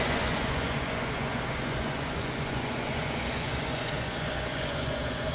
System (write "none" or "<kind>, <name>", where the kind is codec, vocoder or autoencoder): vocoder, Vocos